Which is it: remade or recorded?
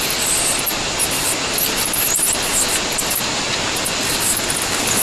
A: recorded